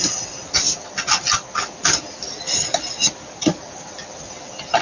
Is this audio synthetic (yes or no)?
no